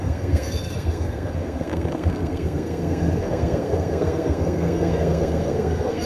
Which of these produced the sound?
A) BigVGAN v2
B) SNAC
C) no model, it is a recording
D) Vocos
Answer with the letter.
B